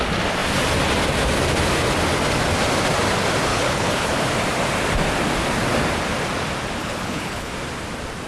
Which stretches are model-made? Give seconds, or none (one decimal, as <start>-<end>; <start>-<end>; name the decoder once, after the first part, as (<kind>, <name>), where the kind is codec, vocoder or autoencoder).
3.5-4.1 (codec, HILCodec); 6.8-7.5